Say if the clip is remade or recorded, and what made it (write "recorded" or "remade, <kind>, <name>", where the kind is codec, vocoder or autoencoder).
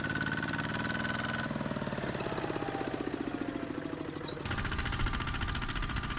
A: recorded